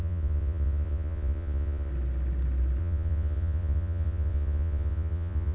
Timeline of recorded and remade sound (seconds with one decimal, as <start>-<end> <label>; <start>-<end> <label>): 0.0-1.9 remade; 1.9-2.8 recorded; 2.8-5.5 remade